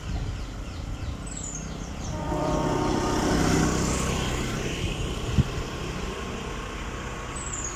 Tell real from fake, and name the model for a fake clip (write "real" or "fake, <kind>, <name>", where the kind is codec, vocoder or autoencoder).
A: fake, vocoder, BigVGAN v2